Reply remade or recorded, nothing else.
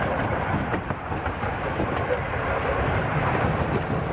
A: remade